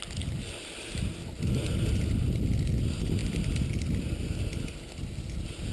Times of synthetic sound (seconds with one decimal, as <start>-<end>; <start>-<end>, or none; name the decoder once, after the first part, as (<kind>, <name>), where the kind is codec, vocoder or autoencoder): none